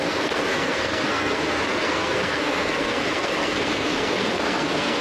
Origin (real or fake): fake